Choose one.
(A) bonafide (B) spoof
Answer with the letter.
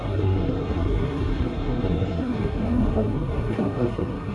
B